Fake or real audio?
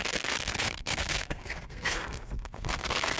fake